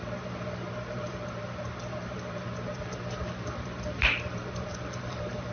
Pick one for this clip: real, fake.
fake